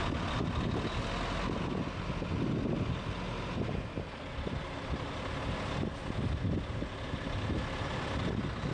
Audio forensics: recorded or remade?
recorded